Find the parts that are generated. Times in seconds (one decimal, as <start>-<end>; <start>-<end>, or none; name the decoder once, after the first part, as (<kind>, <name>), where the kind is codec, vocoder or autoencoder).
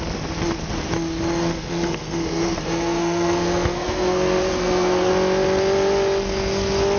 1.4-5.1 (codec, SNAC)